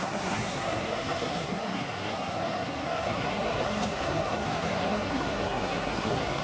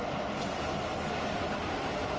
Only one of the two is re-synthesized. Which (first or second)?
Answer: first